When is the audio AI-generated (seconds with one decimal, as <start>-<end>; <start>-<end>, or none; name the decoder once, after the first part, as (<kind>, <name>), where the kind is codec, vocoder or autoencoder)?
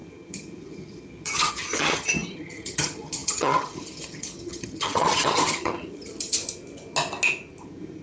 0.0-6.4 (vocoder, HiFi-GAN); 7.6-8.0